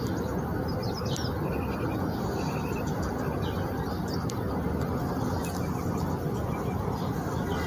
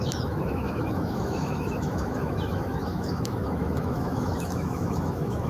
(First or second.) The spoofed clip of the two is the second